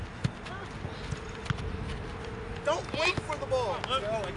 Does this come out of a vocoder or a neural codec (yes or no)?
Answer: no